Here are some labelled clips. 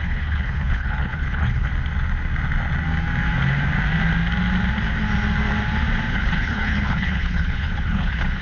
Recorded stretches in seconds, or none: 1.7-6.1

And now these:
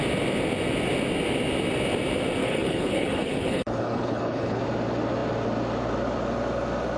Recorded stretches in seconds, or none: 0.0-2.4; 4.6-7.0

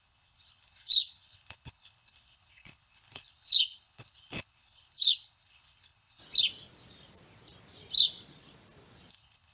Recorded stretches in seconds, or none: 6.2-9.1

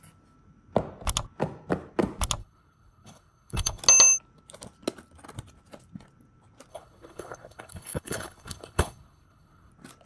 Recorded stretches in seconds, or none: 0.0-2.4; 3.8-6.7; 9.7-10.1

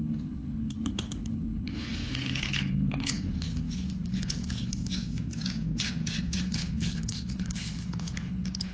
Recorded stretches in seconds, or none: 4.8-6.4